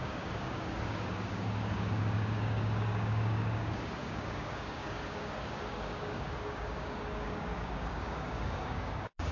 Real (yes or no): no